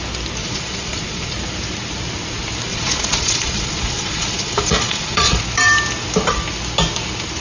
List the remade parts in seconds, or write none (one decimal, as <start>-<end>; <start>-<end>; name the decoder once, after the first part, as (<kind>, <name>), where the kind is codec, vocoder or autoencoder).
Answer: 0.4-1.3 (vocoder, Vocos); 2.7-5.4